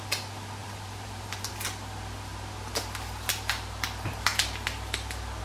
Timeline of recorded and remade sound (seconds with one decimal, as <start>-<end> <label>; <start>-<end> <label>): 0.0-0.6 recorded; 0.6-1.5 remade; 1.5-5.4 recorded